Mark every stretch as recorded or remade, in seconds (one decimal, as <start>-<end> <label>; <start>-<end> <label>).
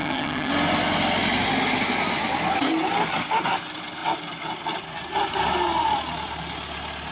0.0-0.5 remade; 0.5-7.1 recorded